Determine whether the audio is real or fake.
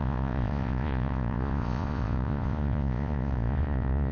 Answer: fake